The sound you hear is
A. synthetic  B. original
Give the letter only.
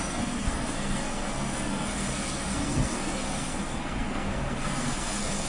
A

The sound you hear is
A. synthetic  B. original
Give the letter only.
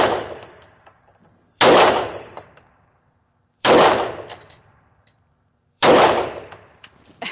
A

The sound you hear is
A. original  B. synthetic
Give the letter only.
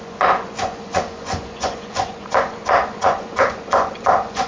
B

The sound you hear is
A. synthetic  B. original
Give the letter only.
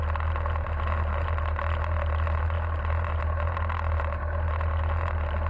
B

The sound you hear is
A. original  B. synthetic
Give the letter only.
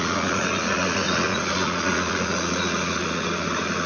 B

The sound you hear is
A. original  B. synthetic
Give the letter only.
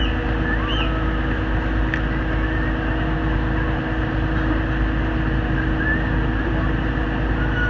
A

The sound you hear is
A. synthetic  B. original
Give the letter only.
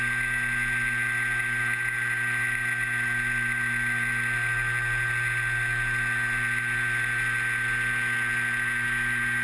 B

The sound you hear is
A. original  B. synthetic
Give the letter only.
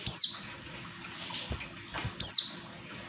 A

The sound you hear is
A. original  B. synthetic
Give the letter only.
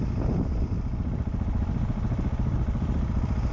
A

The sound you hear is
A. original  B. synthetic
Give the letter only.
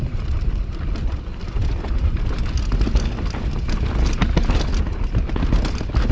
A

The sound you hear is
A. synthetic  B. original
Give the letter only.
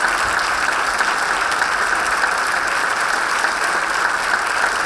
B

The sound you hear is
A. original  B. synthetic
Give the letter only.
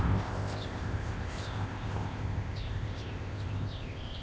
B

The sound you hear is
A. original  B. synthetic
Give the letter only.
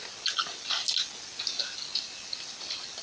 A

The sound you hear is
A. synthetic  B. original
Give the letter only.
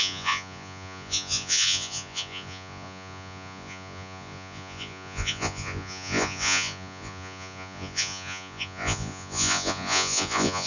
A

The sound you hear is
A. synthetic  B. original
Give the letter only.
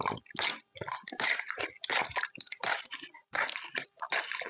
B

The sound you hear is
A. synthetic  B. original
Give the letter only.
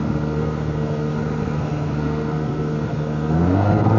A